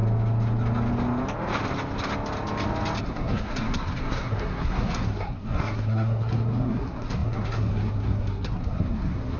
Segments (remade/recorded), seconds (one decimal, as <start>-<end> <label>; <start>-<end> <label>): 0.0-3.0 recorded; 3.0-9.4 remade